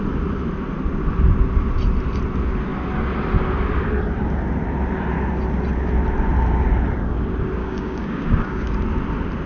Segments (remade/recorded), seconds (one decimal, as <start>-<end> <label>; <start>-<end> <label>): 0.0-7.6 recorded; 7.6-8.7 remade; 8.7-9.5 recorded